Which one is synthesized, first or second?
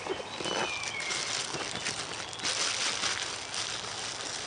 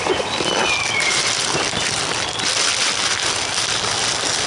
second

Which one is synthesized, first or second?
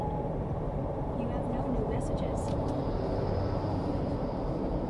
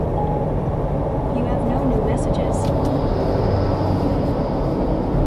first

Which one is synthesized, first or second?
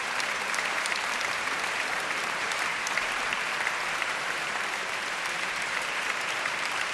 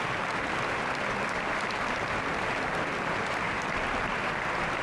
first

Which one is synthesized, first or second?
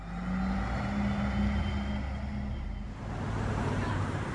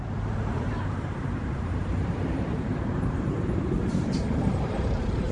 second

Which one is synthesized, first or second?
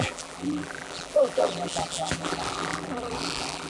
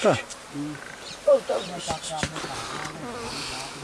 first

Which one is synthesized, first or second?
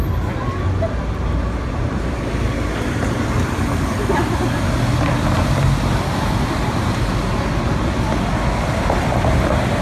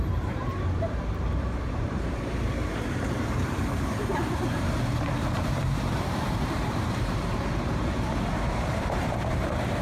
second